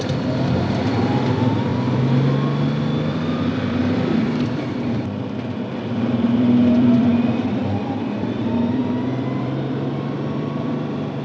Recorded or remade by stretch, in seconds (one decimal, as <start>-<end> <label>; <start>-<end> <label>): 0.0-1.7 remade; 1.7-3.1 recorded; 3.1-7.1 remade; 7.1-7.8 recorded; 7.8-8.8 remade; 8.8-9.4 recorded; 9.4-11.2 remade